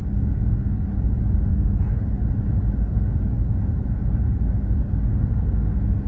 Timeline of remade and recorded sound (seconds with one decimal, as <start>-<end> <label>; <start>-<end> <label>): 0.0-0.9 remade; 0.9-1.5 recorded; 1.5-2.0 remade; 2.0-5.1 recorded; 5.1-6.1 remade